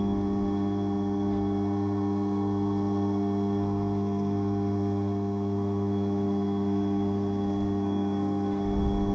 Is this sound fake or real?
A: fake